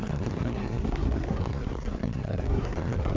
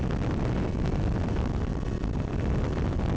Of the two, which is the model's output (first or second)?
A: first